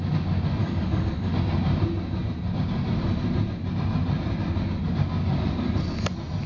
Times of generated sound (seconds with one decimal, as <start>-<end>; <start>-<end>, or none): 0.6-1.3